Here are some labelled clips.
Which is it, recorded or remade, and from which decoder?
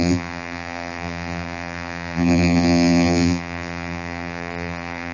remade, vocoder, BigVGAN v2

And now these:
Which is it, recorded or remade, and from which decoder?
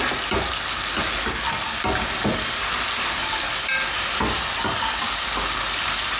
recorded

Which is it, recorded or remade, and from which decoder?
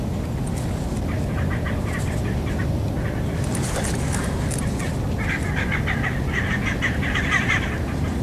recorded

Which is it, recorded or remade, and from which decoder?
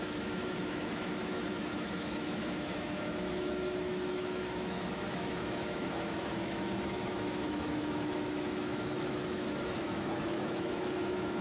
remade, autoencoder, DAC-VAE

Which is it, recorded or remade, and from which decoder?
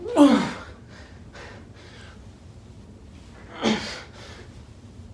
recorded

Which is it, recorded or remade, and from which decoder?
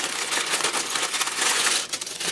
remade, vocoder, Vocos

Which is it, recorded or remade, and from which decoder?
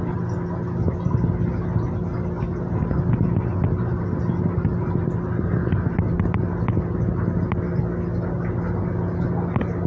recorded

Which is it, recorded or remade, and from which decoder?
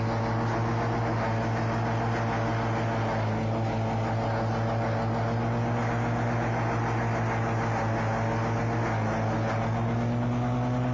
recorded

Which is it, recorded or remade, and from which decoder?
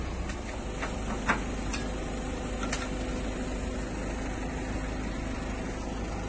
recorded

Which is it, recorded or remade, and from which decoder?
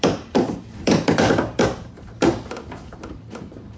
remade, vocoder, BigVGAN v2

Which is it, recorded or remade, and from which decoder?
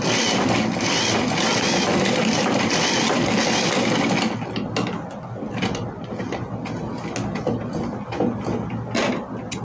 recorded